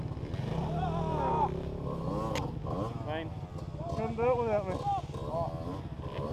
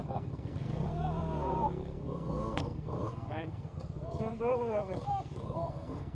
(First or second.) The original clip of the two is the first